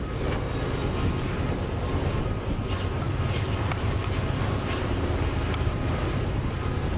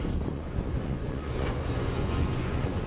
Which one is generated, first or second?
second